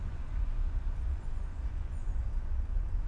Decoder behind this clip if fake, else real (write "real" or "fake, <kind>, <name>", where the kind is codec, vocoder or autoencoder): fake, vocoder, Vocos